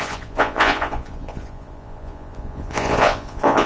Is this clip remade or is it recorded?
remade